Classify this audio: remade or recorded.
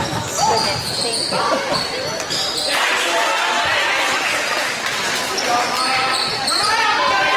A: recorded